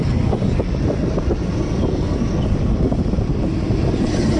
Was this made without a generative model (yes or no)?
yes